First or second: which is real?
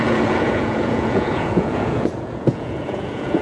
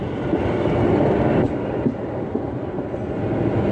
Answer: second